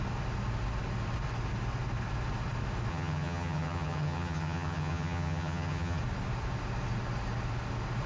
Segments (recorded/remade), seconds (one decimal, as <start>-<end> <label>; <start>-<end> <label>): 0.0-2.9 recorded; 2.9-6.0 remade; 6.0-8.1 recorded